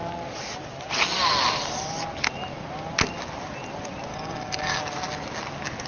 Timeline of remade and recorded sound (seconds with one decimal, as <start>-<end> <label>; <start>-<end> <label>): 0.0-4.1 recorded; 4.1-4.8 remade; 4.8-5.9 recorded